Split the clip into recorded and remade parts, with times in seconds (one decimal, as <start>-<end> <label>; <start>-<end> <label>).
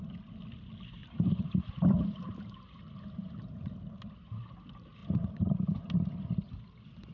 0.0-1.0 recorded; 1.0-3.7 remade; 3.7-5.0 recorded; 5.0-6.5 remade; 6.5-7.1 recorded